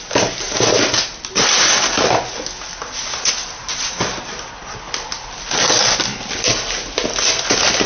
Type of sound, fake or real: real